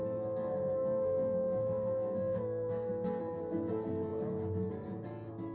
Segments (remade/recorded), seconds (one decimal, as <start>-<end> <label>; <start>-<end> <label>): 0.0-3.2 remade; 3.2-5.5 recorded